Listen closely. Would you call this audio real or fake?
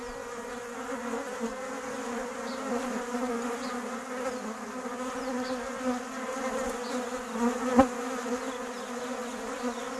real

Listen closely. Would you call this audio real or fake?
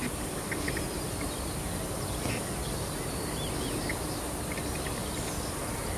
real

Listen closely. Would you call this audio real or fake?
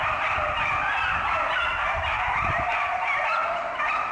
real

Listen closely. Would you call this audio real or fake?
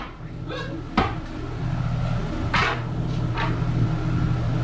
real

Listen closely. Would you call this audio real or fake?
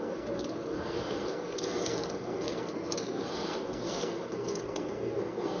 fake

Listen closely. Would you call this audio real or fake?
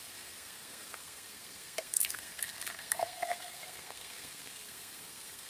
fake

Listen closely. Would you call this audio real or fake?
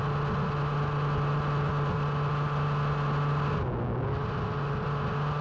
real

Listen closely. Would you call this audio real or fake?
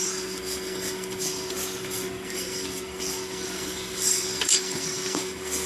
fake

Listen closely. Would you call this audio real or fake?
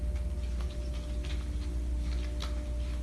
real